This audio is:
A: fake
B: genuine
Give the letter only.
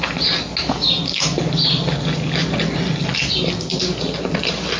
B